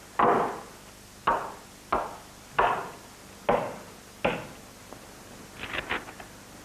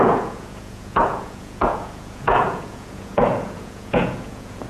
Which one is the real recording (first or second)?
first